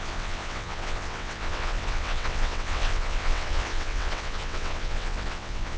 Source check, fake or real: fake